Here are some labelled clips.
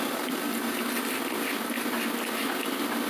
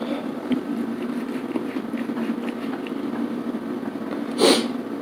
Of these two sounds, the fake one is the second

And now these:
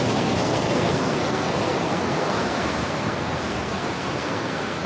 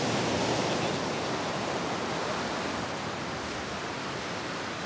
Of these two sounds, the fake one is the first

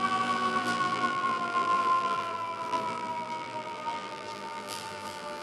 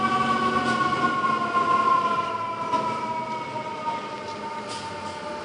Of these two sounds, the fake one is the first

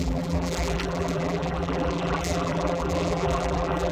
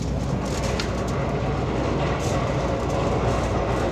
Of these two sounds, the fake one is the first